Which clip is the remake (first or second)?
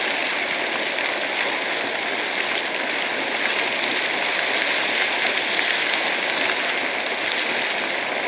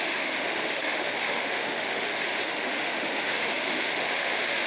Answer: second